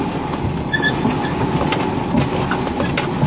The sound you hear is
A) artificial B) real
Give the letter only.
B